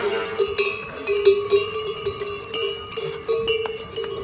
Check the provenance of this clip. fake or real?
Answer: real